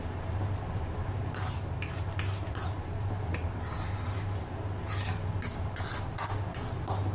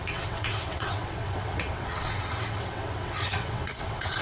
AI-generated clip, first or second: second